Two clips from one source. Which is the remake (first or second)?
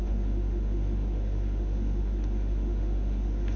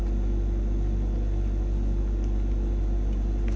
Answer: first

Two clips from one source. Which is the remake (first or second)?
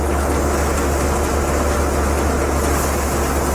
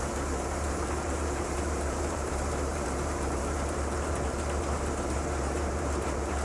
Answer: second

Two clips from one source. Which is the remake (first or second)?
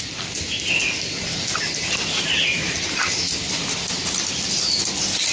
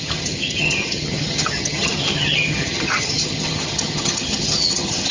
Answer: second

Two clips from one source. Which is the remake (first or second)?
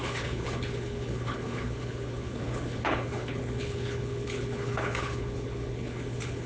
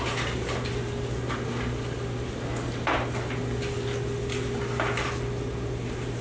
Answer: first